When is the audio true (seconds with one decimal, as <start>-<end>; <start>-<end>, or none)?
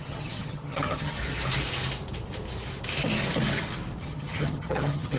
1.2-4.0